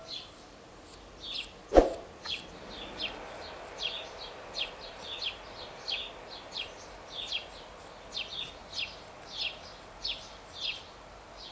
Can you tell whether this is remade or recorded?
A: recorded